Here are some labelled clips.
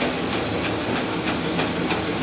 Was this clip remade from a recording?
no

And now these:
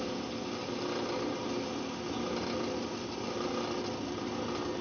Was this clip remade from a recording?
no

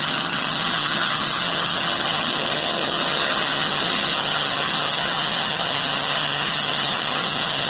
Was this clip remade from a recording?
yes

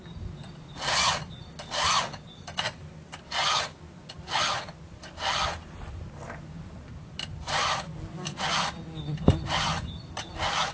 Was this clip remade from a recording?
no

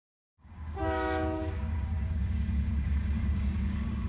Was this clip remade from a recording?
yes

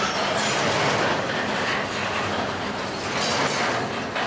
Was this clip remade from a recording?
no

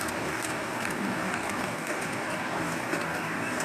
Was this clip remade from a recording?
yes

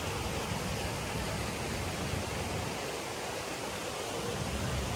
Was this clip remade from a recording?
no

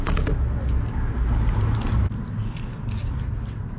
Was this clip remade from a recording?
no